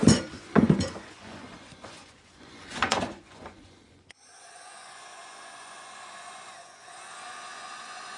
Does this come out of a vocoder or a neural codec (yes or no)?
yes